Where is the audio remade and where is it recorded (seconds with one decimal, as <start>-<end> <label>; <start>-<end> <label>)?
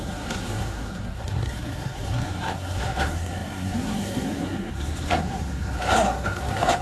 0.0-6.8 remade